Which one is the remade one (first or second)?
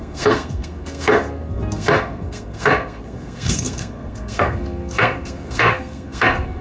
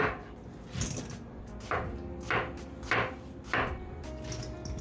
first